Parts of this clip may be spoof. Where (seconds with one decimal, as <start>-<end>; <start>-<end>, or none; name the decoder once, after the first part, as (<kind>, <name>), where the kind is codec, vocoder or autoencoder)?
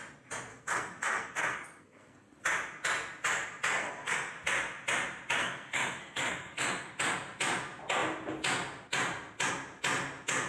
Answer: 0.5-2.4 (codec, SNAC); 3.8-4.3; 5.4-6.9